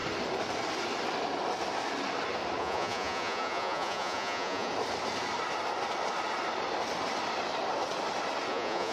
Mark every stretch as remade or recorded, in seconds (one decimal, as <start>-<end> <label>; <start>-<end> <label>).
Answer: 0.0-2.6 recorded; 2.6-4.7 remade; 4.7-8.5 recorded; 8.5-8.9 remade